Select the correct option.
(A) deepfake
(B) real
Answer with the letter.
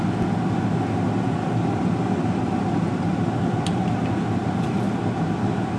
B